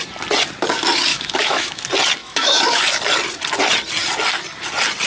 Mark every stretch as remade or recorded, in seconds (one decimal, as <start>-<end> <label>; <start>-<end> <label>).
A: 0.0-1.1 recorded; 1.1-1.8 remade; 1.8-2.2 recorded; 2.2-2.8 remade; 2.8-5.1 recorded